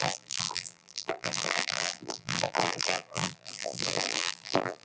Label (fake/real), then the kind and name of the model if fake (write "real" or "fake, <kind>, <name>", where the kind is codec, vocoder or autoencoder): fake, vocoder, BigVGAN v2